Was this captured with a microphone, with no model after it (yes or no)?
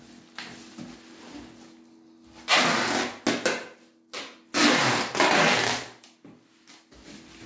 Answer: yes